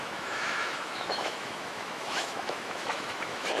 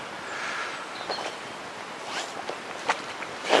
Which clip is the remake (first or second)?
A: first